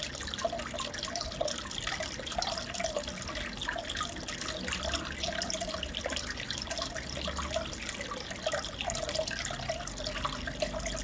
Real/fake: real